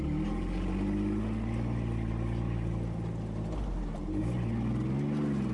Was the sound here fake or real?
real